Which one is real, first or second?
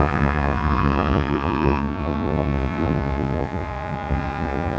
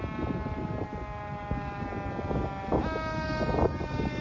second